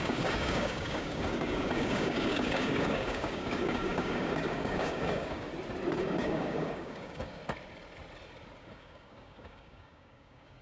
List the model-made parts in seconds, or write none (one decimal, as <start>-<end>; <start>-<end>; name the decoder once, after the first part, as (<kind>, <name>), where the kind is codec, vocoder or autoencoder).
0.0-5.5 (codec, DAC); 6.0-7.4; 8.6-10.6